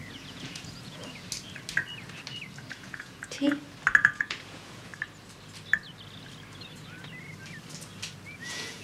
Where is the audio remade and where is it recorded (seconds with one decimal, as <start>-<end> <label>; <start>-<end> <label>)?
0.0-1.0 remade; 1.0-2.7 recorded; 2.7-3.5 remade; 3.5-4.0 recorded; 4.0-4.9 remade; 4.9-8.3 recorded; 8.3-8.8 remade